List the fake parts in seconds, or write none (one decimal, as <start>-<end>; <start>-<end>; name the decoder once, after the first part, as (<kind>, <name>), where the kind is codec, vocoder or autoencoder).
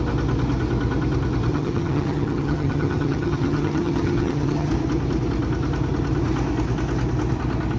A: 1.5-4.7 (vocoder, HiFi-GAN)